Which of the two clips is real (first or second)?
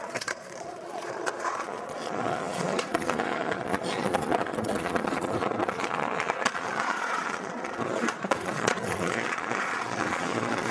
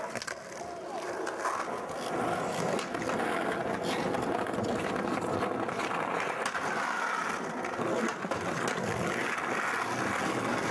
second